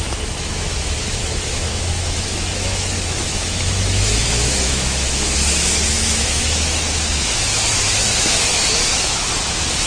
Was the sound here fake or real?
fake